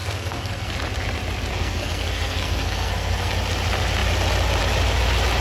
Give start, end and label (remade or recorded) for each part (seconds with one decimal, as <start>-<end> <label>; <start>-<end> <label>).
0.0-0.7 remade; 0.7-1.5 recorded; 1.5-3.3 remade; 3.3-5.4 recorded